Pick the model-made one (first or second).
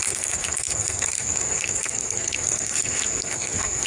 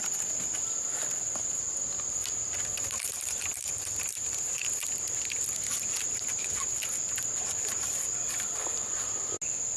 first